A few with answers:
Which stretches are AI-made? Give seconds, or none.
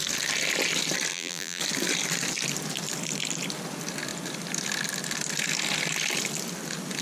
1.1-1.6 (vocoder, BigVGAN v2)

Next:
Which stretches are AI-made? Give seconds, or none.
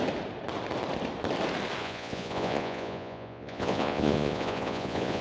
1.8-5.2 (vocoder, Vocos)